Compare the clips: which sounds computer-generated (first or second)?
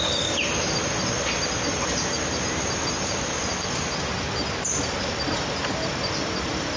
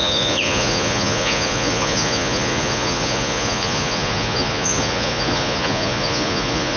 second